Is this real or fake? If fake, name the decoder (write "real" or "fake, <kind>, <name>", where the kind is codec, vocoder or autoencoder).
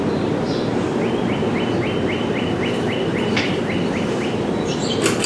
fake, vocoder, BigVGAN v2